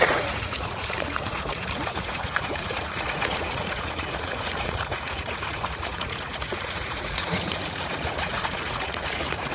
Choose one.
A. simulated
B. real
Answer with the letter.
A